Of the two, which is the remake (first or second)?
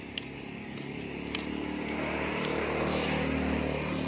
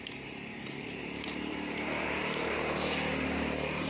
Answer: second